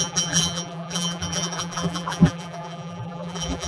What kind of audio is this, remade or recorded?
remade